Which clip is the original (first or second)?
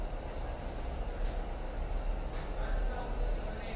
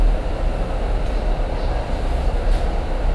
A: first